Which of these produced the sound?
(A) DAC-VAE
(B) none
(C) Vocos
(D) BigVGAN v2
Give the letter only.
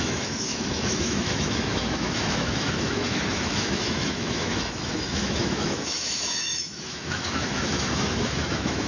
A